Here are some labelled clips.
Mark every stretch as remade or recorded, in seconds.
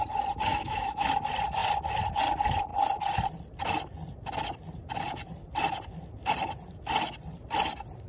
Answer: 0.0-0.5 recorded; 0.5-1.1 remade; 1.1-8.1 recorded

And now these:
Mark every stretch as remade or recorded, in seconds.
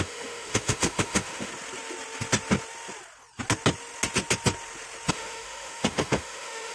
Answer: 0.0-1.5 remade; 1.5-5.1 recorded; 5.1-6.7 remade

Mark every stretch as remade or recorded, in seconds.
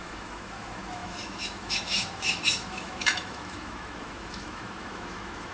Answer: 0.0-5.5 remade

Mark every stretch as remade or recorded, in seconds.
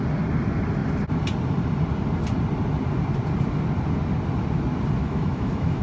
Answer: 0.0-5.0 recorded; 5.0-5.8 remade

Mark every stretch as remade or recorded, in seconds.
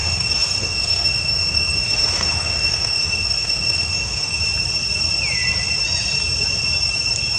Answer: 0.0-4.4 remade; 4.4-7.4 recorded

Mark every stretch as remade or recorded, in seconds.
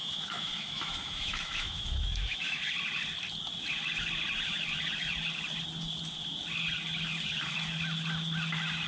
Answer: 0.0-2.6 remade; 2.6-8.9 recorded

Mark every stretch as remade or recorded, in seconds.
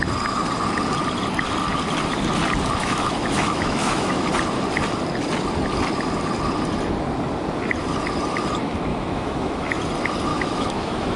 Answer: 0.0-2.8 recorded; 2.8-4.3 remade; 4.3-8.9 recorded; 8.9-9.7 remade; 9.7-10.3 recorded; 10.3-11.2 remade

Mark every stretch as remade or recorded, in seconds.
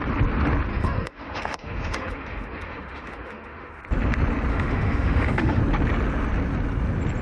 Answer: 0.0-0.7 recorded; 0.7-3.8 remade; 3.8-4.5 recorded; 4.5-5.6 remade; 5.6-7.2 recorded